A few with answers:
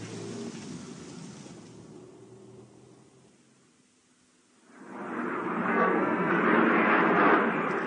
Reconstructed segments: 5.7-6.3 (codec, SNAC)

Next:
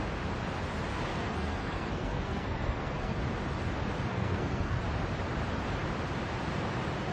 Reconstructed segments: 1.1-3.2 (codec, SNAC); 4.1-4.8

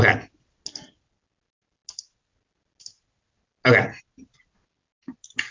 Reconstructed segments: none